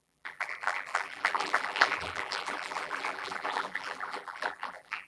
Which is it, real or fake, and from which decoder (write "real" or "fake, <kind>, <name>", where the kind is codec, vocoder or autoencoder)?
fake, vocoder, BigVGAN v2